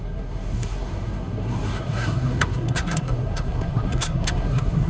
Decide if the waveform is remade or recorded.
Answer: remade